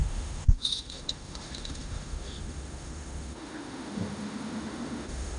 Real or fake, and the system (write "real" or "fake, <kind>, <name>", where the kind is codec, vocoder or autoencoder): fake, autoencoder, DAC-VAE